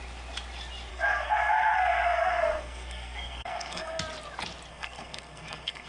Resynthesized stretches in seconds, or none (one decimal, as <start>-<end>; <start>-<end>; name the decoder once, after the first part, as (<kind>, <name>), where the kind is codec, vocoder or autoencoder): 0.9-4.0 (codec, SNAC); 4.7-5.9